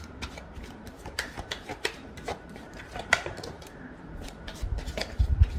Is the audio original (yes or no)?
no